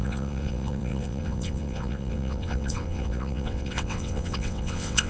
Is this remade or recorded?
remade